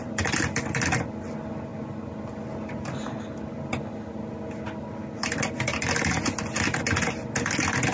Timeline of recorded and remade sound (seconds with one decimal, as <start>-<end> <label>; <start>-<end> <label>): 0.0-7.9 recorded